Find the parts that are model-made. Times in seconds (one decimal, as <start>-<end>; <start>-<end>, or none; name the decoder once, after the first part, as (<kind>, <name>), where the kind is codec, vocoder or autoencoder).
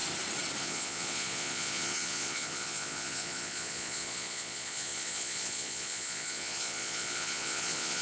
0.6-8.0 (vocoder, Vocos)